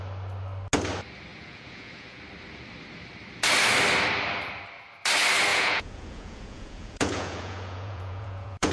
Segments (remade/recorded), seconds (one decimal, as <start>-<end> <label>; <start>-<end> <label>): 0.0-1.3 recorded; 1.3-2.2 remade; 2.2-5.5 recorded; 5.5-8.7 remade

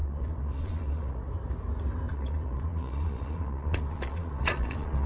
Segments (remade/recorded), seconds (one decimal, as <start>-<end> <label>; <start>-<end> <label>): 0.0-1.3 remade; 1.3-2.1 recorded; 2.1-5.1 remade

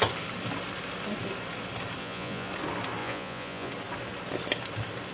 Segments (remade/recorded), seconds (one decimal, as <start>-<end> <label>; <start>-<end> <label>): 0.0-2.0 recorded; 2.0-2.5 remade; 2.5-3.0 recorded; 3.0-3.7 remade; 3.7-5.1 recorded

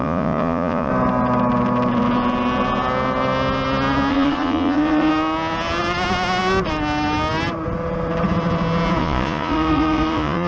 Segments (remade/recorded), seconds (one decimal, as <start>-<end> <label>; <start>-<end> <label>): 0.0-0.9 remade; 0.9-4.1 recorded; 4.1-5.1 remade; 5.1-9.0 recorded; 9.0-10.5 remade

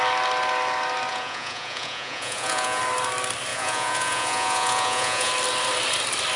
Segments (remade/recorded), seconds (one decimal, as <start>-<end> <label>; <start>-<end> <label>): 0.0-1.1 recorded; 1.1-2.8 remade; 2.8-3.5 recorded; 3.5-5.3 remade; 5.3-6.4 recorded